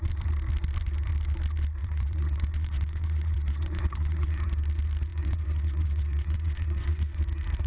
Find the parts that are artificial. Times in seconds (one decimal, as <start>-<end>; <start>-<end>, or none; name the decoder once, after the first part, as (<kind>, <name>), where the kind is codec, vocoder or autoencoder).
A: 1.8-4.4 (vocoder, WaveNeXt); 5.1-7.2